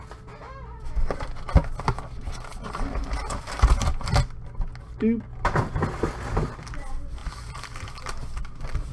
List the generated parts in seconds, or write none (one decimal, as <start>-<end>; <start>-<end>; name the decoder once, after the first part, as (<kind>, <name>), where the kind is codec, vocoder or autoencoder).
none